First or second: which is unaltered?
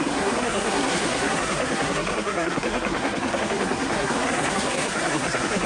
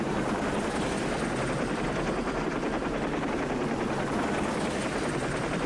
second